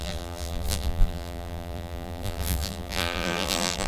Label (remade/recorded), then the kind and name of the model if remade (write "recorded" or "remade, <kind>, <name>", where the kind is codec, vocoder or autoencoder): remade, vocoder, BigVGAN v2